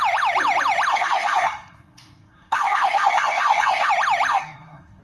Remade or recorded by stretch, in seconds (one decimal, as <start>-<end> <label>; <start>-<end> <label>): 0.0-0.9 recorded; 0.9-3.9 remade; 3.9-4.3 recorded; 4.3-5.0 remade